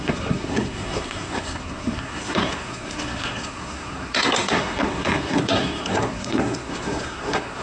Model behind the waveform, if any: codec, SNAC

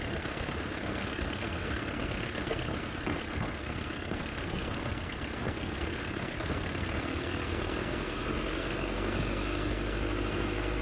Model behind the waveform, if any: codec, SNAC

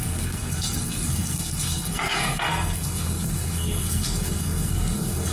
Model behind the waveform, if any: codec, SNAC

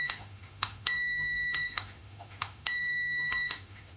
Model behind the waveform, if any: autoencoder, DAC-VAE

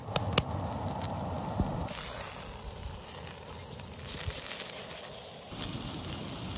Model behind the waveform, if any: none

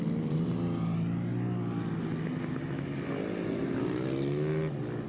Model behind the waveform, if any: none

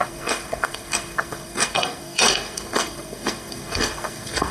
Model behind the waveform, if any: codec, SNAC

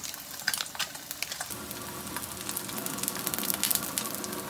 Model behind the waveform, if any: none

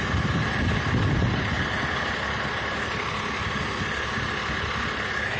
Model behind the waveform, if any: none